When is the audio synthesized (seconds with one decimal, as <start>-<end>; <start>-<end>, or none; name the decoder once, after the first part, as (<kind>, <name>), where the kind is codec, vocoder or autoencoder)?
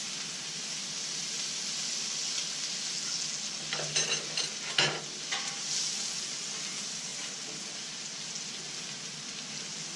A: none